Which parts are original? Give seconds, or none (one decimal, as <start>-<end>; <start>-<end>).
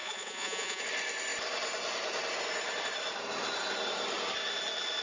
0.8-5.0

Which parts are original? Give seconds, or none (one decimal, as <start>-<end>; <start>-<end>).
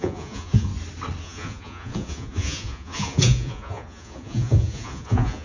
0.7-1.2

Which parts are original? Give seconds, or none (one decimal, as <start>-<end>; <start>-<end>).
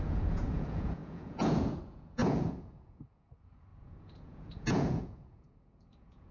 none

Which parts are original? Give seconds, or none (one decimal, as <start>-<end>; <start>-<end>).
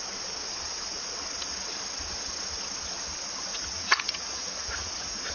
0.0-3.5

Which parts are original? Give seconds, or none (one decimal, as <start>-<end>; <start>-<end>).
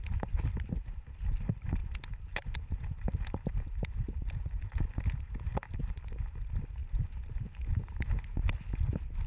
0.0-9.3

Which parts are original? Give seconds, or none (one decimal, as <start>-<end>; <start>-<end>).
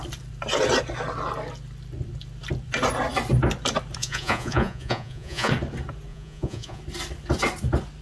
0.0-4.0; 5.5-6.1; 6.8-8.0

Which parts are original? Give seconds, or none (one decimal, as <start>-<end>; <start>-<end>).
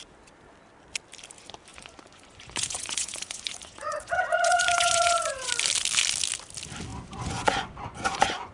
0.0-1.7; 5.5-6.9